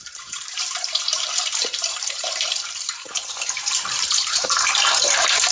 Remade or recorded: remade